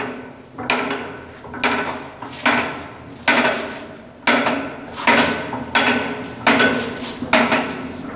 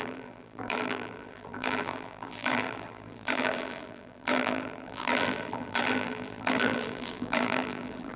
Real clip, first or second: first